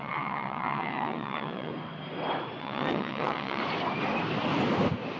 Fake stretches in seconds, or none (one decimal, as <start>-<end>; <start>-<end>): 0.0-1.7; 2.6-3.6